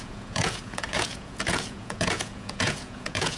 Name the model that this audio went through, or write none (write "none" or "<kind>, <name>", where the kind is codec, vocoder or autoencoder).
vocoder, Vocos